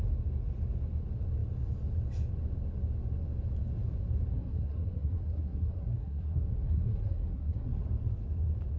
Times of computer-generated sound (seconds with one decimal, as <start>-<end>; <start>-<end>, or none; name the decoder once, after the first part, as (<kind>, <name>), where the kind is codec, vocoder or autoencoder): 4.3-7.8 (codec, SNAC)